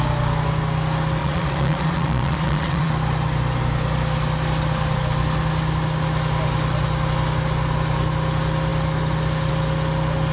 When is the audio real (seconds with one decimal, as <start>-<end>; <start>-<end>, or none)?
0.0-1.2; 2.9-10.3